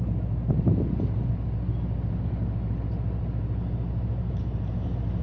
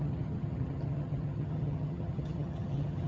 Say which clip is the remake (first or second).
second